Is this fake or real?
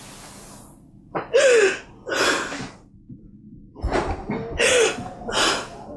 real